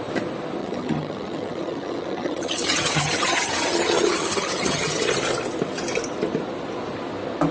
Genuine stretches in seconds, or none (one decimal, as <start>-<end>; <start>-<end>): 0.0-0.6; 5.1-7.5